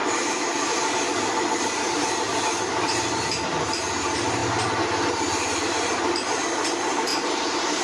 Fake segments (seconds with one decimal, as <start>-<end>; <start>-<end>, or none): 0.0-4.4; 5.1-7.8